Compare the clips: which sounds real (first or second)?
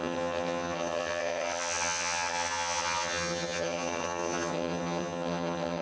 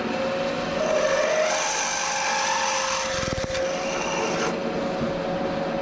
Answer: second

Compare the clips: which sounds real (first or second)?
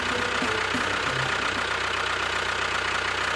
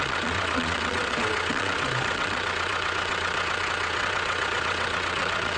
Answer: first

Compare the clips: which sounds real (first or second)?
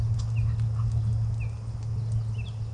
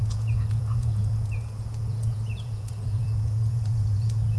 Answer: first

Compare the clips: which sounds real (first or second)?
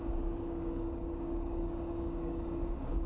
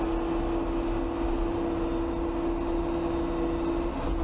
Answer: second